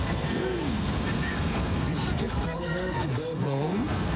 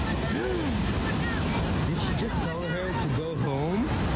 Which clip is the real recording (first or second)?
second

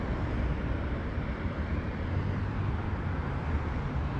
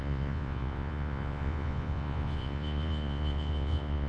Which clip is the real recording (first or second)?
first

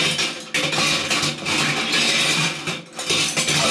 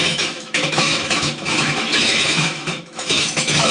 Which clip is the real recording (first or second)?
first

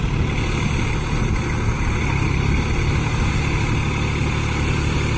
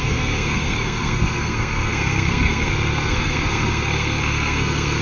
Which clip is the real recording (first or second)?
first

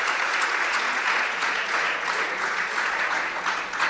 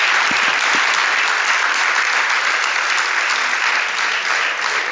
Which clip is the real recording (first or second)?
second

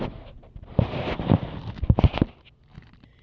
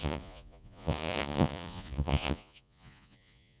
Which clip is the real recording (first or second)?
first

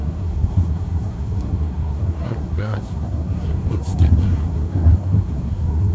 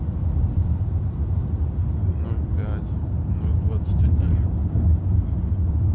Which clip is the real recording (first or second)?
second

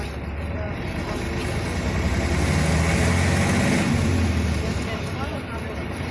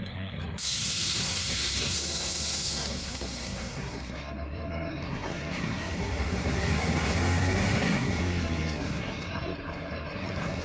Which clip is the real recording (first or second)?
first